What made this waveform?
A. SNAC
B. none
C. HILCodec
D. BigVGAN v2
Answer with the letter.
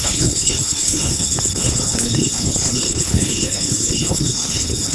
C